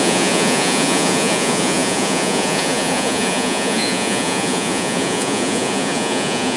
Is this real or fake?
fake